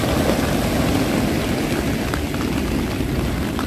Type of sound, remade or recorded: recorded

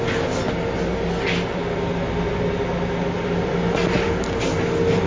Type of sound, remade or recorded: recorded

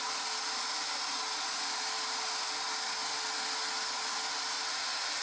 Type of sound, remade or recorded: recorded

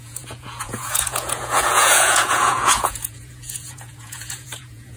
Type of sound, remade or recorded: remade